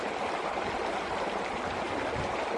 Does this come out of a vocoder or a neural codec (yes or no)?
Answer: no